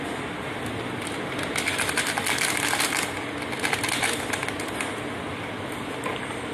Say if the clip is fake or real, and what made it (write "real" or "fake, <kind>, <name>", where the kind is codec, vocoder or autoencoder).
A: real